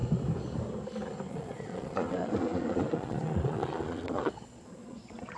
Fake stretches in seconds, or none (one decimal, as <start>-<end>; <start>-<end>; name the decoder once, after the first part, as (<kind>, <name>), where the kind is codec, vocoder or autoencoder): 1.3-5.4 (vocoder, Vocos)